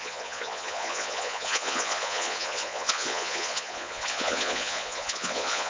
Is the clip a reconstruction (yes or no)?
yes